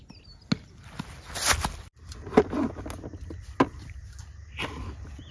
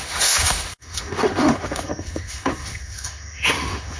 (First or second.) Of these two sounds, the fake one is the second